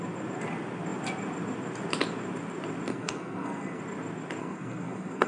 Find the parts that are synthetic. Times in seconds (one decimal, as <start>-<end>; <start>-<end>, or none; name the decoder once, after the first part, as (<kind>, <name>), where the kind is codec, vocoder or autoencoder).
2.9-3.8 (codec, SNAC); 4.4-5.3